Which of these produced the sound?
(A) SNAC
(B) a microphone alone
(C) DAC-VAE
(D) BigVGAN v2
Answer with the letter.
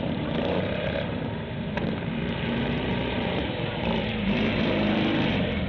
D